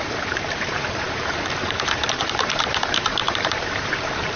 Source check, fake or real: fake